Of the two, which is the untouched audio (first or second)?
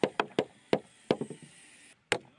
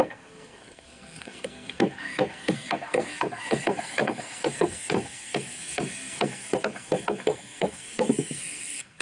first